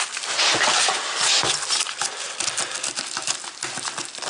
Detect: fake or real real